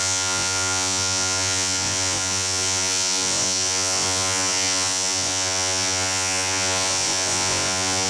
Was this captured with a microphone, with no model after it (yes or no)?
no